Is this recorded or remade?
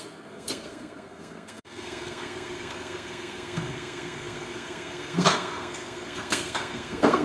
remade